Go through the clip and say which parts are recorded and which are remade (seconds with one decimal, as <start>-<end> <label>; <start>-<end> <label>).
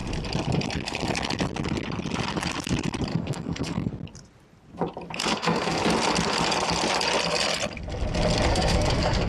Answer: 0.0-3.1 recorded; 3.1-3.9 remade; 3.9-5.2 recorded; 5.2-5.8 remade; 5.8-8.5 recorded; 8.5-9.3 remade